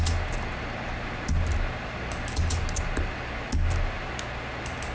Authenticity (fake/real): real